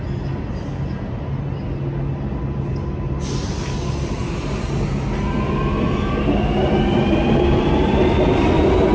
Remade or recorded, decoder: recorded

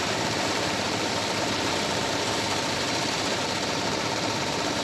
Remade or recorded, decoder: remade, vocoder, BigVGAN v2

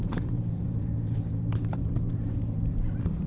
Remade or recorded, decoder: remade, vocoder, BigVGAN v2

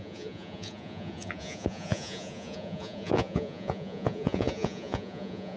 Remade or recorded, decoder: remade, vocoder, Vocos